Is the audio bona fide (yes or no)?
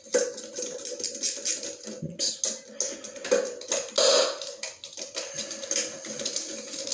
yes